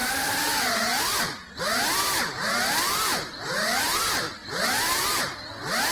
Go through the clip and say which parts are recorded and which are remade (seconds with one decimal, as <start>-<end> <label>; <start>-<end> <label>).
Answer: 0.0-5.9 remade